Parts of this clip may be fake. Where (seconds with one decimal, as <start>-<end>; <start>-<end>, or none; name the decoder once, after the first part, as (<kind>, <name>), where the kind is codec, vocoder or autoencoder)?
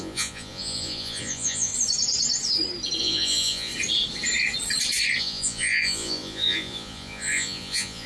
0.0-1.7 (vocoder, Vocos); 3.0-3.7; 5.2-8.1